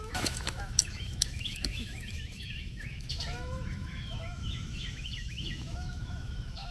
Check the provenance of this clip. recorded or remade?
remade